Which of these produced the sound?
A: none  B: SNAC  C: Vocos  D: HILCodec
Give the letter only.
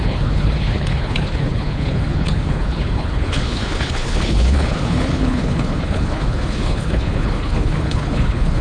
D